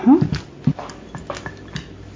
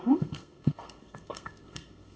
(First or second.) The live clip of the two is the first